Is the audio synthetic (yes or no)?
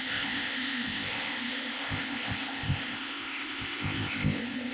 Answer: yes